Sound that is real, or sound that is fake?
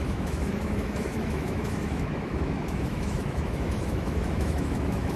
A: fake